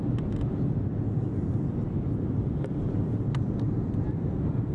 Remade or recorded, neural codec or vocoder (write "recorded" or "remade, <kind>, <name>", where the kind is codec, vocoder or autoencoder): recorded